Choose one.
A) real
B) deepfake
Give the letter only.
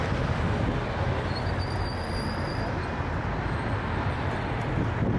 A